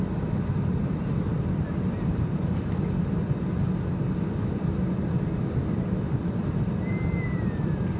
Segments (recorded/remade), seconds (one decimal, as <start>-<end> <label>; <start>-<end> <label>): 0.0-3.2 remade; 3.2-4.5 recorded; 4.5-8.0 remade